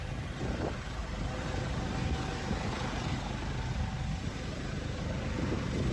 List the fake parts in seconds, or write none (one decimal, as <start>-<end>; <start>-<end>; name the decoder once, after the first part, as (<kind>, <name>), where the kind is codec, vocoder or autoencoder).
0.0-1.0 (vocoder, BigVGAN v2); 4.2-5.9